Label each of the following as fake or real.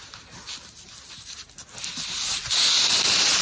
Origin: real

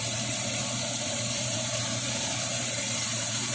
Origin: fake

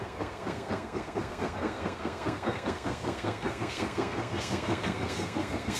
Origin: fake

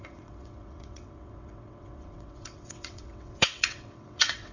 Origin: fake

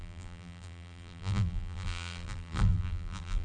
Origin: fake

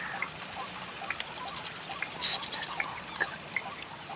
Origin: real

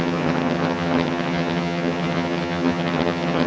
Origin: fake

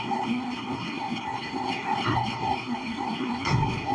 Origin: fake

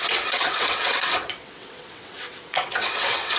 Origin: fake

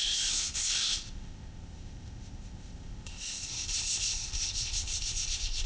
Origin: fake